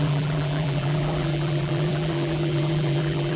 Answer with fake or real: fake